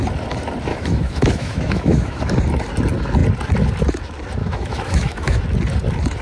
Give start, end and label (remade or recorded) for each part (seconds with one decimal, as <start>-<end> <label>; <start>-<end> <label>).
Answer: 0.0-0.7 recorded; 0.7-2.2 remade; 2.2-4.4 recorded; 4.4-5.4 remade; 5.4-6.2 recorded